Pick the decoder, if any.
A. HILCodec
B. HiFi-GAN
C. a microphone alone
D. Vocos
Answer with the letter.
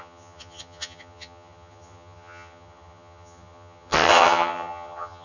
B